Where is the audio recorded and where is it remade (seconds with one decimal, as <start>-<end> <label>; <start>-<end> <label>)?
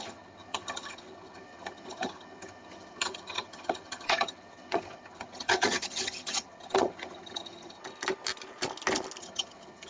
0.0-7.8 remade; 7.8-9.2 recorded; 9.2-9.9 remade